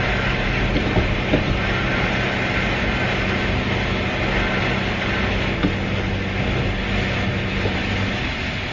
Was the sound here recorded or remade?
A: recorded